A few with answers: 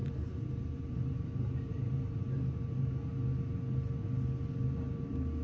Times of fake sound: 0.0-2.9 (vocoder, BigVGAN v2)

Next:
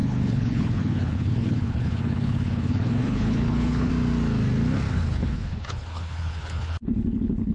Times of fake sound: 0.0-3.9 (codec, HILCodec); 4.9-7.5

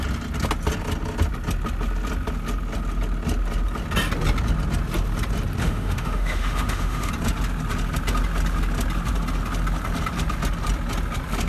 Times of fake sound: 5.6-7.1 (autoencoder, DAC-VAE)

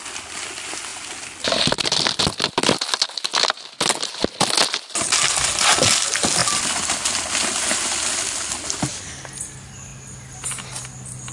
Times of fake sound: 6.4-7.3 (vocoder, BigVGAN v2)

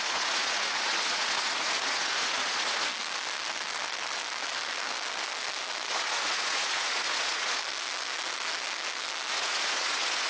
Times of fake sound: 0.0-2.9 (vocoder, Vocos); 5.9-7.6; 9.3-10.3

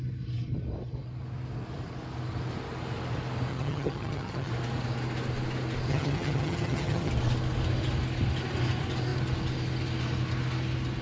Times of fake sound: 3.5-4.5 (vocoder, HiFi-GAN); 5.9-7.1

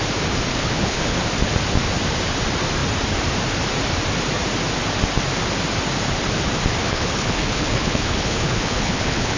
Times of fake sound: 0.5-1.2 (codec, HILCodec); 6.8-9.4

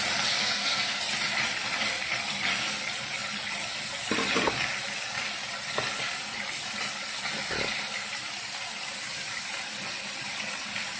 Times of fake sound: 0.4-1.0 (codec, SNAC)